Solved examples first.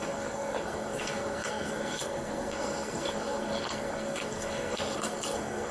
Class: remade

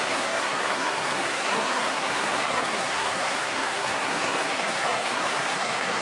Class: remade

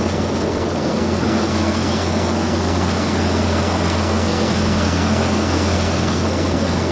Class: remade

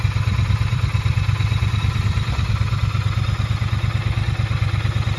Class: recorded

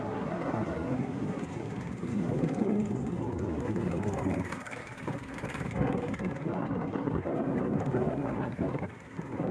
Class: remade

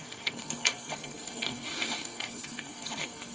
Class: remade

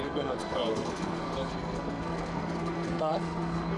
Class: remade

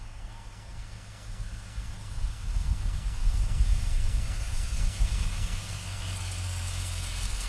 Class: remade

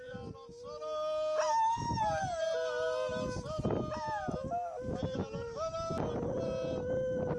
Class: recorded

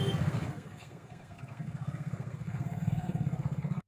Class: remade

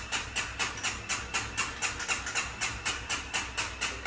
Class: recorded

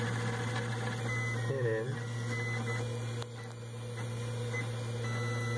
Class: recorded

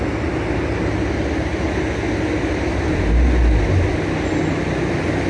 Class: recorded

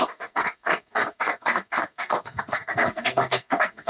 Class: remade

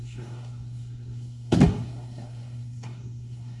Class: remade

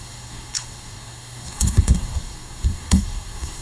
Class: remade